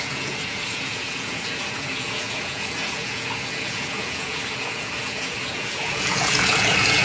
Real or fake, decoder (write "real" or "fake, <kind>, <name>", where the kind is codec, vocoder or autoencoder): fake, vocoder, Vocos